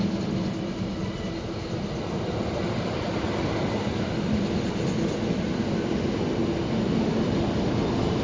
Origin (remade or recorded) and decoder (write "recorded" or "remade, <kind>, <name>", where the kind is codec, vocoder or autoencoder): recorded